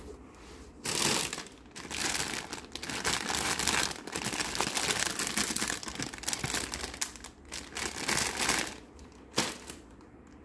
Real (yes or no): yes